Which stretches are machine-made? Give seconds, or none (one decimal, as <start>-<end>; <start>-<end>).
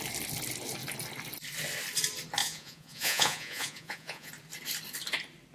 2.4-4.3